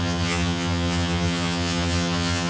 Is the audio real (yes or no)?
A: no